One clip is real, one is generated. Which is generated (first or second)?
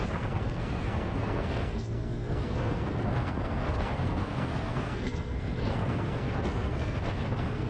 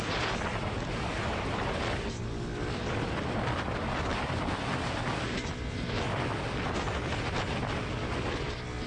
first